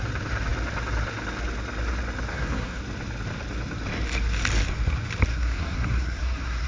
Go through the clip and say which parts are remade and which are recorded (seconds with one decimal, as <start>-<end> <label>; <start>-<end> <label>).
0.0-2.3 recorded; 2.3-2.8 remade; 2.8-5.3 recorded; 5.3-6.7 remade